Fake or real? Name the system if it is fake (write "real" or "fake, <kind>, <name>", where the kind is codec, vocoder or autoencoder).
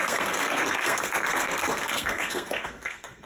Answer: fake, codec, SNAC